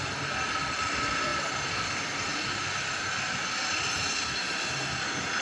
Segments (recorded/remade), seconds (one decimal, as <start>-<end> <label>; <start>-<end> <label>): 0.0-5.4 recorded